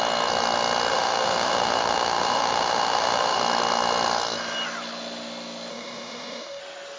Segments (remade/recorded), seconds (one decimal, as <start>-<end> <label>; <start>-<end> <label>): 0.0-0.9 recorded; 0.9-3.4 remade; 3.4-5.7 recorded; 5.7-6.6 remade; 6.6-7.0 recorded